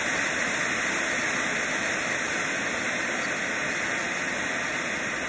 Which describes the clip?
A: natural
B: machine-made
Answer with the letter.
A